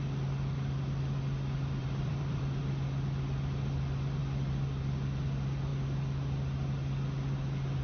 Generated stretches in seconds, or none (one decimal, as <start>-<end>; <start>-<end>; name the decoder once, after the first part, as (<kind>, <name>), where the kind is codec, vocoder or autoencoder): 1.8-2.6 (vocoder, BigVGAN v2)